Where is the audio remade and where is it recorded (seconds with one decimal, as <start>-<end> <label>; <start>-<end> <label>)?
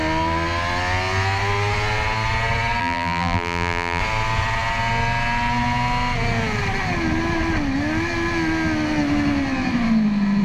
0.0-2.8 recorded; 2.8-4.0 remade; 4.0-10.4 recorded